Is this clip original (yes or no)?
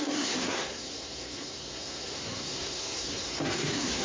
no